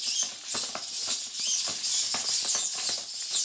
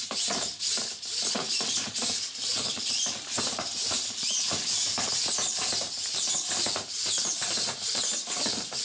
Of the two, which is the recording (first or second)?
first